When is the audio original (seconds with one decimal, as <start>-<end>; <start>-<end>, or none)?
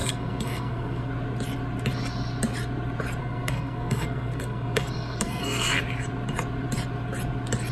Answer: 1.1-3.2; 5.8-7.7